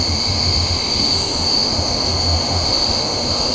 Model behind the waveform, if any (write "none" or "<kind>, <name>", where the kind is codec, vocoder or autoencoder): autoencoder, DAC-VAE